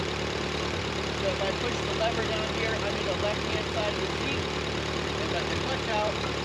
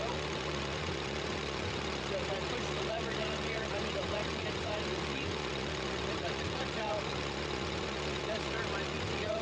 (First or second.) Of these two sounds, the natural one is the first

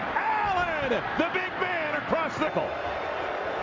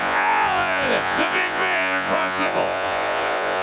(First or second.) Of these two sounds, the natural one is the first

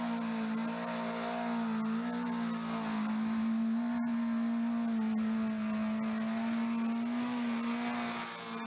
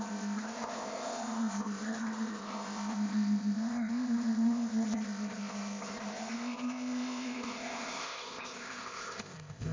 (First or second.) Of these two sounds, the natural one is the first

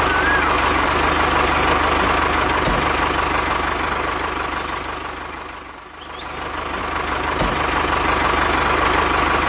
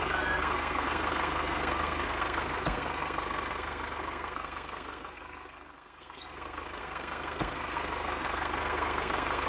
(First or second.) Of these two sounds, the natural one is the first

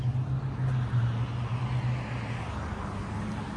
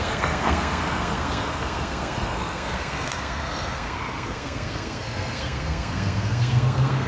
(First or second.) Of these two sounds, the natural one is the first